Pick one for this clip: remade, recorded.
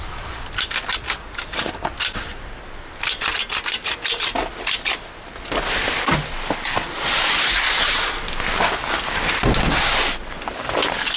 recorded